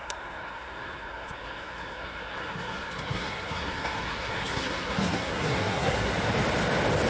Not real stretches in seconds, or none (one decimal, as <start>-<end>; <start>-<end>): 0.0-6.1